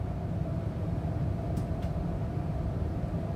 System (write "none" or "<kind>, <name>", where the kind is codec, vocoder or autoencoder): none